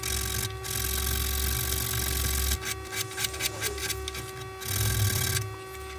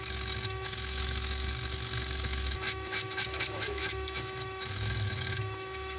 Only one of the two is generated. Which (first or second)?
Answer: second